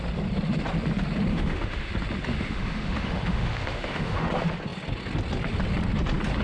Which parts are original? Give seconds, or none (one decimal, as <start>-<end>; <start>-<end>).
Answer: 0.0-1.3; 1.9-2.3; 4.3-6.4